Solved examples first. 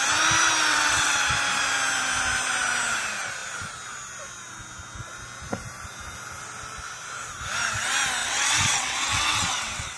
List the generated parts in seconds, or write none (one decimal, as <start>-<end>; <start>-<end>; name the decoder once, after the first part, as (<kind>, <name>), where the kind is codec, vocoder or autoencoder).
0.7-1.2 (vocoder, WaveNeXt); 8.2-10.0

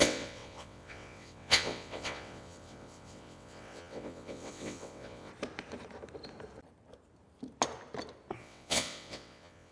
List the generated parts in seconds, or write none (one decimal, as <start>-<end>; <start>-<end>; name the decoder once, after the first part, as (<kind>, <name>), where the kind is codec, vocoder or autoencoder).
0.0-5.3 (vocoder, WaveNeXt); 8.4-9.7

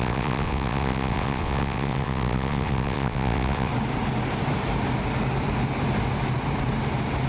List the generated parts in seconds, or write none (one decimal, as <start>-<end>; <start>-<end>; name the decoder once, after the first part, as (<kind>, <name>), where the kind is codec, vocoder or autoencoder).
0.0-3.7 (vocoder, WaveNeXt)

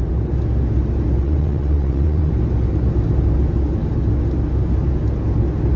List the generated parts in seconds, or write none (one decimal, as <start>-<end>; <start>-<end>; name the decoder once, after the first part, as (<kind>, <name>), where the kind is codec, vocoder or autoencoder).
1.2-2.3 (vocoder, WaveNeXt)

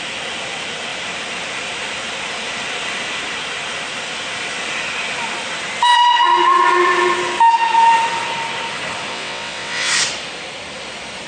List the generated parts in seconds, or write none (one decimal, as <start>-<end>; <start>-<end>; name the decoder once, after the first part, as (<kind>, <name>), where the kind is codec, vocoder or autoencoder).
9.1-9.9 (vocoder, WaveNeXt)